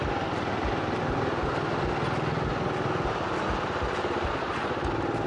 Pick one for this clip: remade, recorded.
recorded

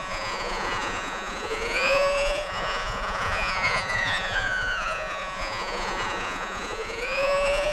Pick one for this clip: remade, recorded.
remade